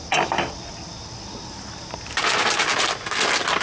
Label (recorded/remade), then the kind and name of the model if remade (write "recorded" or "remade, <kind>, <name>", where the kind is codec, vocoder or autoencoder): recorded